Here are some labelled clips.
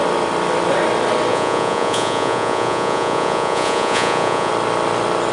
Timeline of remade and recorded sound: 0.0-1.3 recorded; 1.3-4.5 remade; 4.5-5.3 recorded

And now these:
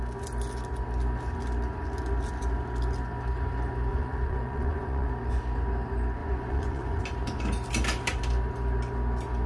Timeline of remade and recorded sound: 0.0-3.9 recorded; 3.9-5.4 remade; 5.4-6.2 recorded; 6.2-7.0 remade; 7.0-9.5 recorded

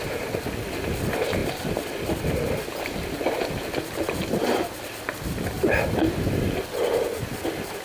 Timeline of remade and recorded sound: 0.0-7.8 recorded

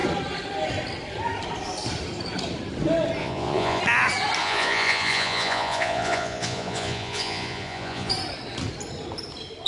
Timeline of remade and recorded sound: 0.0-3.2 recorded; 3.2-3.8 remade; 3.8-4.4 recorded; 4.4-8.1 remade; 8.1-9.7 recorded

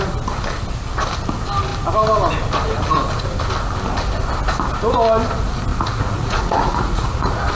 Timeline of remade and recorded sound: 0.0-5.7 recorded; 5.7-7.5 remade

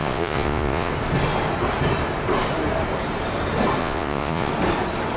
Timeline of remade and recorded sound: 0.0-0.9 remade; 0.9-3.8 recorded; 3.8-4.5 remade; 4.5-5.2 recorded

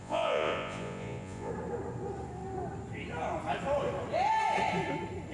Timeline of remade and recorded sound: 0.0-1.5 remade; 1.5-5.3 recorded

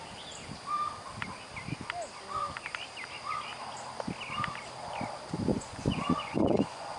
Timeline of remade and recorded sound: 0.0-5.5 recorded; 5.5-7.0 remade